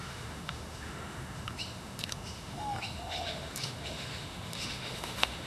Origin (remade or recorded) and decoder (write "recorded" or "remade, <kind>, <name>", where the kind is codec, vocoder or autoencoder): remade, autoencoder, DAC-VAE